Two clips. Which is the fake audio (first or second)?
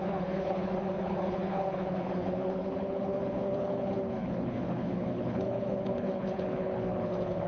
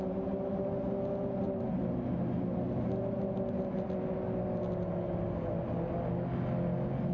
first